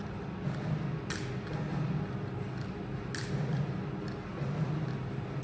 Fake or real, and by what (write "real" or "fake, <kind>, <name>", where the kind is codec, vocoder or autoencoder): real